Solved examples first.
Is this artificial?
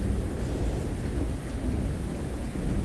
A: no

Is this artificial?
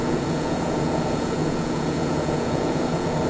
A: yes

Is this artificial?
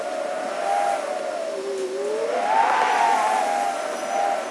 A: no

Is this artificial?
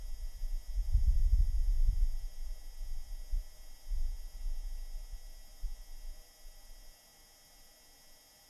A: no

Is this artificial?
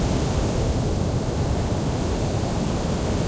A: no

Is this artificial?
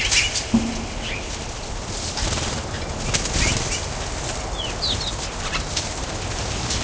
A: no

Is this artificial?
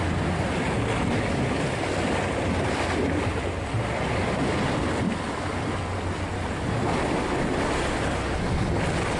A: no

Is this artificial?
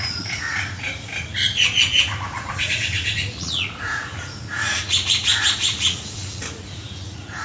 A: yes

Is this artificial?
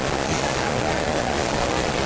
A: yes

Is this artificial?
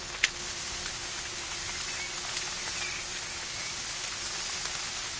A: no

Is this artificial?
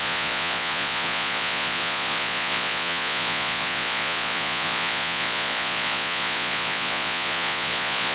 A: yes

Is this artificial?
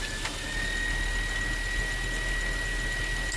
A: no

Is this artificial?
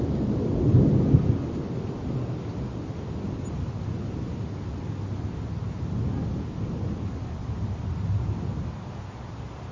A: no